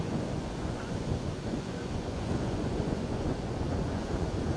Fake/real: fake